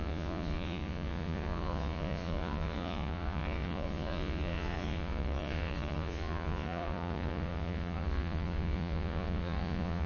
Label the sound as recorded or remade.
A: remade